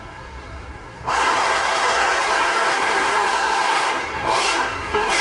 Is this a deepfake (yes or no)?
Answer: yes